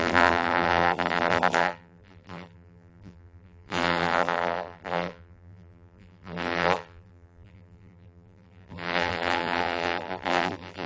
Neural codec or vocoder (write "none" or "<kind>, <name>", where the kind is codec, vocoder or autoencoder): vocoder, BigVGAN v2